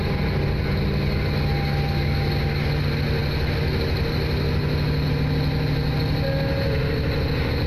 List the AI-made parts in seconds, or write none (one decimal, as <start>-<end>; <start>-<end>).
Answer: none